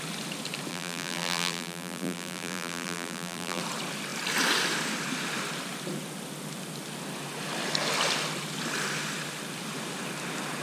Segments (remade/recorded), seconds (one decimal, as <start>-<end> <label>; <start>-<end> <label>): 0.0-0.7 recorded; 0.7-3.6 remade; 3.6-10.6 recorded

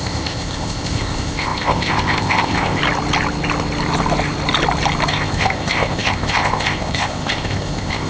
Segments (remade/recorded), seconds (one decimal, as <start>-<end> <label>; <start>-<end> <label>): 0.0-2.8 remade; 2.8-5.1 recorded; 5.1-8.1 remade